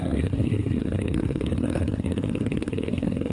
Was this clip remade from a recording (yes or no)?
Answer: yes